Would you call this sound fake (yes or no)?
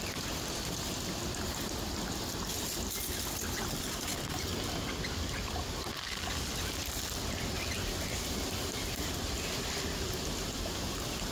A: no